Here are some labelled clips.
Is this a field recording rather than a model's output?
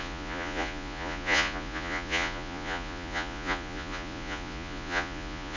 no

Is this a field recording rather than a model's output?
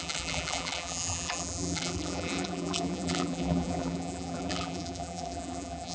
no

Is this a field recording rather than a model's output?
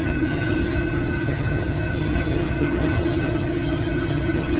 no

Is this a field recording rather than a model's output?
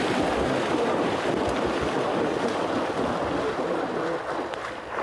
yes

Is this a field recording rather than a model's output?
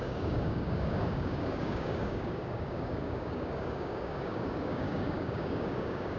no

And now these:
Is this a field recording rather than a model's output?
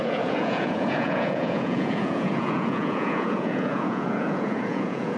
no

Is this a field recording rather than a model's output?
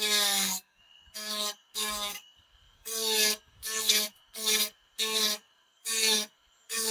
no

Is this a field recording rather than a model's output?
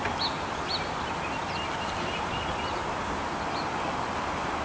yes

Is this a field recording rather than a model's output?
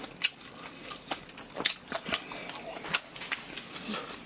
yes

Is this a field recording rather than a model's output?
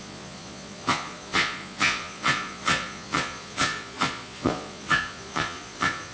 no